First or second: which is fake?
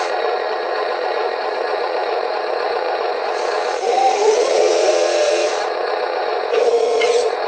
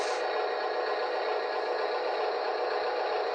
first